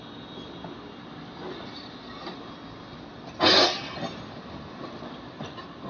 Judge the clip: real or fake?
real